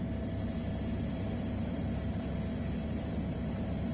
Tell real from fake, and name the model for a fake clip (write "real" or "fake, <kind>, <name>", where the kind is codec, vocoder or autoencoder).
real